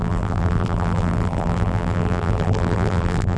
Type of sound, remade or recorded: remade